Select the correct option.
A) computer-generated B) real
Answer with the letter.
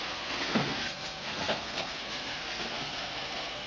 A